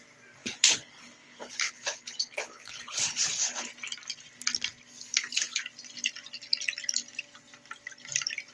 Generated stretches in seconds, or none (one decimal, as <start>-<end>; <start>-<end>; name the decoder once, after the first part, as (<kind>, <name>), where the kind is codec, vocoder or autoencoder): 0.4-3.7 (codec, HILCodec); 5.1-5.6